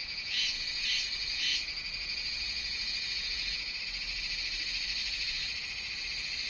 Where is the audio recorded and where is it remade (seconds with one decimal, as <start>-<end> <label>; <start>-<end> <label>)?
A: 0.0-3.8 remade; 3.8-6.5 recorded